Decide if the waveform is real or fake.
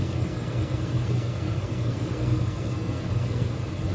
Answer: fake